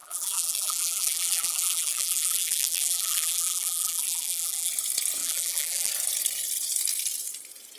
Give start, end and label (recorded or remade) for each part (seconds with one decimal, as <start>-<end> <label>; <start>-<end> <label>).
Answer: 0.0-4.7 remade; 4.7-5.2 recorded; 5.2-5.9 remade; 5.9-7.8 recorded